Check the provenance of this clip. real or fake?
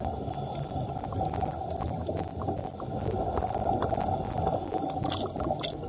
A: real